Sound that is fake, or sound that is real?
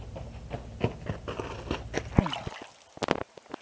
real